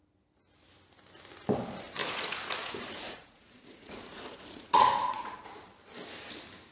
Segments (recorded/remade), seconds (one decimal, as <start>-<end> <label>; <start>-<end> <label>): 0.0-2.0 recorded; 2.0-5.7 remade; 5.7-6.7 recorded